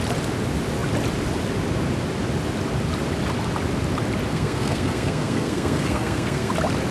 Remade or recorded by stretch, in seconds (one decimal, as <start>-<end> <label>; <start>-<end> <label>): 0.0-4.3 recorded; 4.3-6.5 remade; 6.5-6.9 recorded